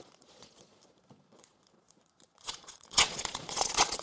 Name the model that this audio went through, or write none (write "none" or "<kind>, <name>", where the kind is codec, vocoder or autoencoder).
vocoder, Vocos